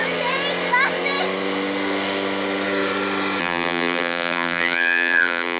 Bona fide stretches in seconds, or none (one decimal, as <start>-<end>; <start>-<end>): 0.0-3.4